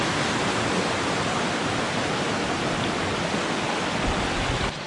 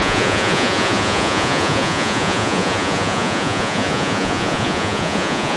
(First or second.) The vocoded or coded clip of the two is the second